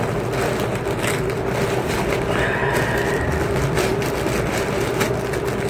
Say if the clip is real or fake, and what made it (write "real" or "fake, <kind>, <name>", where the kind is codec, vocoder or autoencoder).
real